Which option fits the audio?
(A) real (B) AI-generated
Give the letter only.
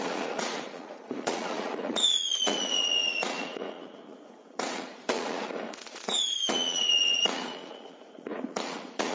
B